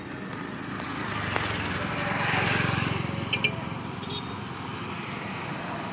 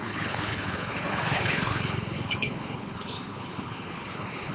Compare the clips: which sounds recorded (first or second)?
first